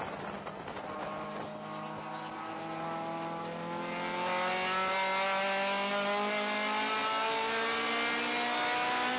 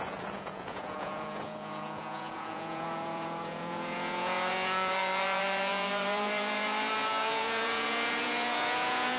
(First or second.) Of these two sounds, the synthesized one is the second